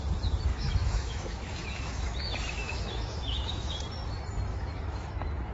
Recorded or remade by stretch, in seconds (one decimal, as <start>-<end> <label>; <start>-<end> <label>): 0.0-0.5 recorded; 0.5-3.8 remade; 3.8-4.5 recorded; 4.5-5.5 remade